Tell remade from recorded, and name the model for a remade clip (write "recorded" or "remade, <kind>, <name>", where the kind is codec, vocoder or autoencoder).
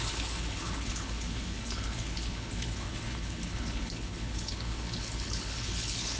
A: remade, codec, HILCodec